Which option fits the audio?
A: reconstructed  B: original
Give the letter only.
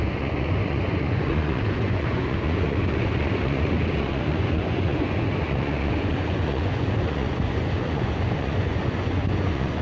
A